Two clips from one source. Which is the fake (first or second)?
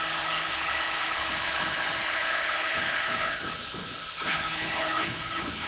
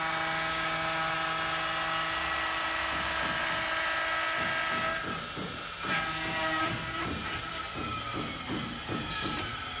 first